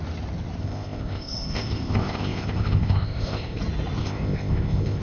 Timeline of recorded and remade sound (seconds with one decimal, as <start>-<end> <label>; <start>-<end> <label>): 0.0-0.6 recorded; 0.6-3.6 remade; 3.6-4.0 recorded; 4.0-5.0 remade